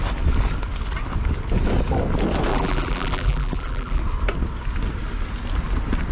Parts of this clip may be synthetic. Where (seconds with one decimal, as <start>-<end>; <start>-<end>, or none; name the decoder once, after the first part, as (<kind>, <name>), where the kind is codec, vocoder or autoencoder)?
2.5-4.0 (vocoder, BigVGAN v2)